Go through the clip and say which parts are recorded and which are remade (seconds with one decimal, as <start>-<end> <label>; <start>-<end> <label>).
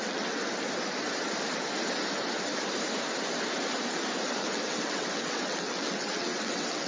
0.0-0.4 remade; 0.4-4.5 recorded; 4.5-6.9 remade